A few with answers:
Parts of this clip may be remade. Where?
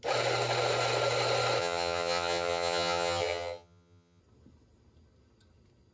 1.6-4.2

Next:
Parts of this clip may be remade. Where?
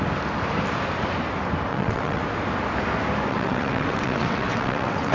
1.7-2.2; 3.3-5.1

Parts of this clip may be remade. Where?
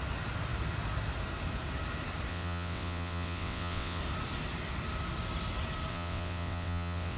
2.3-4.0; 5.9-7.2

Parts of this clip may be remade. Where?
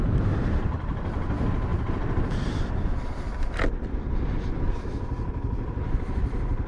none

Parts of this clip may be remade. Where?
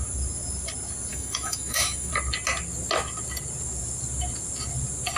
1.1-2.1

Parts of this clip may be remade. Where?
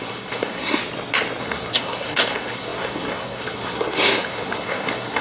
0.0-0.8; 1.4-5.2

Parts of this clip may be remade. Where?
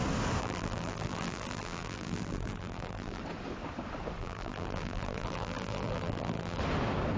0.4-3.2; 4.2-6.6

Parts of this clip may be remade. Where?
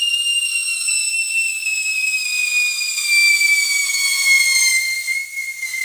none